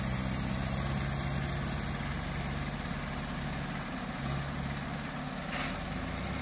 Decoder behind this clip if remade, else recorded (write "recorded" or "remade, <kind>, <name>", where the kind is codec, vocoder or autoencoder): recorded